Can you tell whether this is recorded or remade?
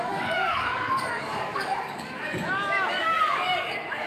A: remade